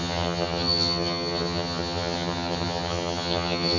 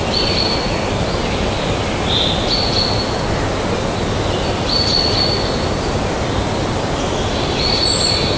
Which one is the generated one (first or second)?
first